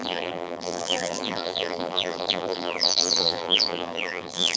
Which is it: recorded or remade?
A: remade